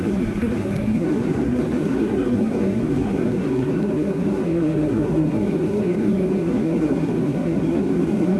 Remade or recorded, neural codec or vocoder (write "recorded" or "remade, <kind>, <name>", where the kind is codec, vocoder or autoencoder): remade, codec, SNAC